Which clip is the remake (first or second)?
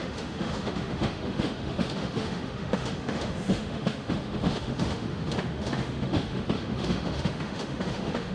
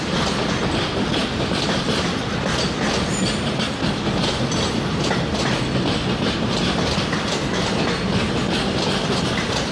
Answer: first